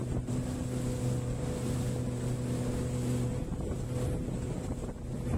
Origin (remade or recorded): recorded